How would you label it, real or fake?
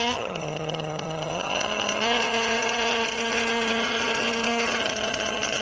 fake